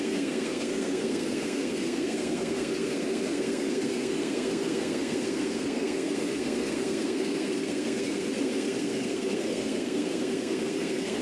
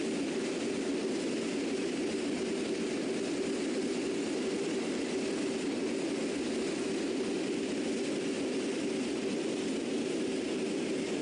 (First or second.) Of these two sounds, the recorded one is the second